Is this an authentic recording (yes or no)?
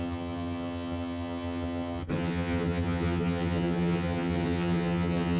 no